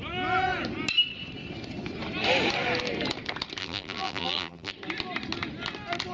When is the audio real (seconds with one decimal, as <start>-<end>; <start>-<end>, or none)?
0.0-3.6; 4.7-6.1